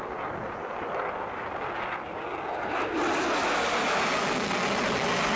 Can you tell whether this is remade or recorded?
recorded